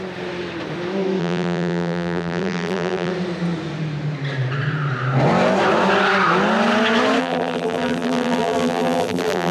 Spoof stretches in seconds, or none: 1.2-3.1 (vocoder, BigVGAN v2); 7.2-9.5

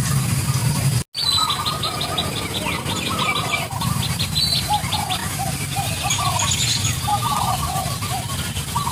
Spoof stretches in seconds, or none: 5.2-5.9 (vocoder, BigVGAN v2)

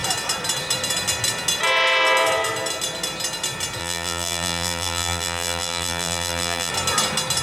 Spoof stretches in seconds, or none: 3.8-6.7 (vocoder, BigVGAN v2)

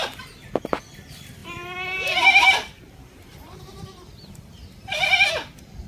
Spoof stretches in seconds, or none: 1.4-3.6 (vocoder, BigVGAN v2)

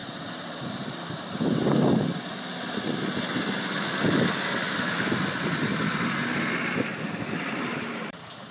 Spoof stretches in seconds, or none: 0.0-0.9 (vocoder, BigVGAN v2); 6.9-8.5

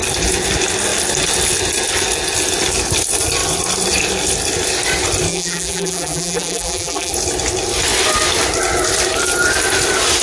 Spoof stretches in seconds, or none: 5.3-7.1 (vocoder, BigVGAN v2)

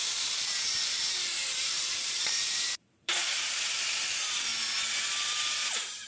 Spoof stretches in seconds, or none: 0.0-4.5 (vocoder, BigVGAN v2); 5.2-6.1

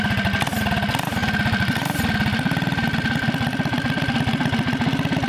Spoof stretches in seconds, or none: 1.2-4.4 (vocoder, BigVGAN v2)